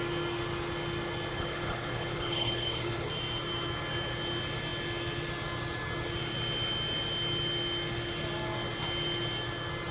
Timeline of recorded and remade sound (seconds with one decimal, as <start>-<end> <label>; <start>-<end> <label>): 0.0-1.3 recorded; 1.3-3.1 remade; 3.1-9.9 recorded